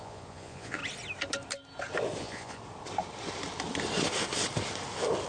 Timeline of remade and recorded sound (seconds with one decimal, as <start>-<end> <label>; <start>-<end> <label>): 0.0-0.8 remade; 0.8-2.2 recorded; 2.2-2.6 remade; 2.6-5.3 recorded